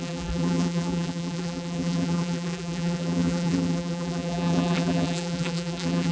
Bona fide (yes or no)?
no